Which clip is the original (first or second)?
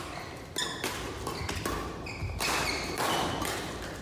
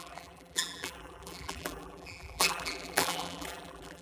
first